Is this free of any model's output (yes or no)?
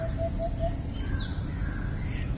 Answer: yes